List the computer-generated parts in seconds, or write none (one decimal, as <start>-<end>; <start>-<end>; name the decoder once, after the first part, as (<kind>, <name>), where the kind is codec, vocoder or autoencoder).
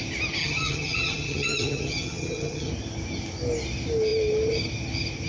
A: 0.4-2.7 (vocoder, HiFi-GAN)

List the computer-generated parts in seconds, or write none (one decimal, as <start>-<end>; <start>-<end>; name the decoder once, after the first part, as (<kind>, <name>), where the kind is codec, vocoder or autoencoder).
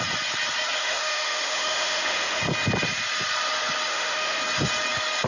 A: 0.8-2.4 (autoencoder, DAC-VAE); 3.9-4.4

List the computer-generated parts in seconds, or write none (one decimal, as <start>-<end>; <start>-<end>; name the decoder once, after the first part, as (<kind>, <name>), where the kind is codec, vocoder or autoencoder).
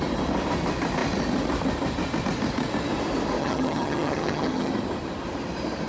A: 3.4-4.7 (vocoder, HiFi-GAN)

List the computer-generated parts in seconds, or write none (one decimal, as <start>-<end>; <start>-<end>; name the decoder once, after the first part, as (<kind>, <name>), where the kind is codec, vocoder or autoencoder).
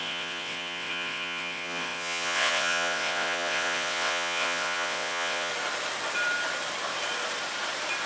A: 0.0-5.5 (vocoder, WaveNeXt)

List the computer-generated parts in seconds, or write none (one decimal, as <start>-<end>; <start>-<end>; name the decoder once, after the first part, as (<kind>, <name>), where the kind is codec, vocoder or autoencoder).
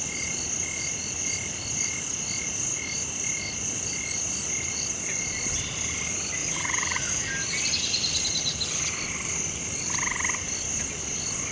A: 6.4-7.3 (vocoder, Vocos)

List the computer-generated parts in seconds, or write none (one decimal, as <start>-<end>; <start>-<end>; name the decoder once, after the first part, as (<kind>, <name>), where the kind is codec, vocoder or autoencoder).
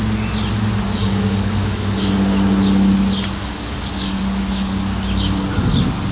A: 1.0-2.0 (codec, DAC); 3.4-4.2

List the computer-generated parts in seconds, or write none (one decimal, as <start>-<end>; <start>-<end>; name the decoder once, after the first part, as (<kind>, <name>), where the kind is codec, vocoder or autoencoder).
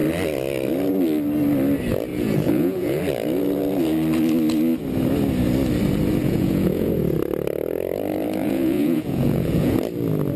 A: 2.1-3.0 (vocoder, Vocos); 6.2-6.9; 8.4-9.8